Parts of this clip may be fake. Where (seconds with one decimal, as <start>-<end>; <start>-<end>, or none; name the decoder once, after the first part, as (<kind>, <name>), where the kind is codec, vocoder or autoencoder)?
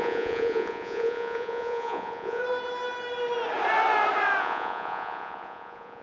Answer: 0.0-2.4 (vocoder, Vocos); 4.4-6.0